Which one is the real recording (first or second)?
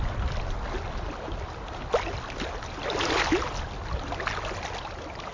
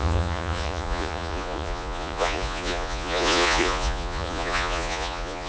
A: first